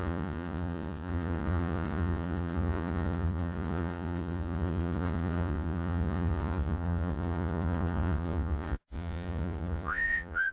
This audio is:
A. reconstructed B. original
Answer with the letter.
A